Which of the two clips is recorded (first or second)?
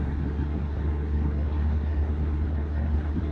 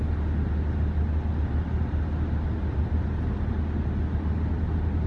second